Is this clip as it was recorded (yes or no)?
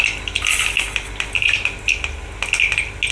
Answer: yes